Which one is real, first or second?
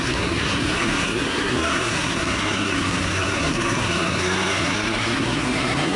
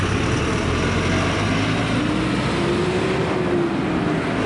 second